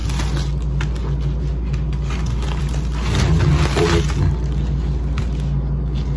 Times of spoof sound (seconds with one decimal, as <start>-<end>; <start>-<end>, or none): none